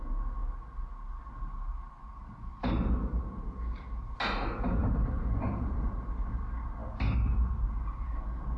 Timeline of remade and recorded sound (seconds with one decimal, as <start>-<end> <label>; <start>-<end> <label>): 0.0-4.8 recorded; 4.8-5.9 remade; 5.9-8.6 recorded